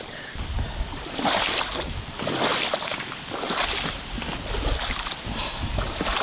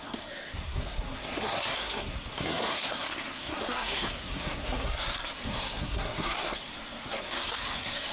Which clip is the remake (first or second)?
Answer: second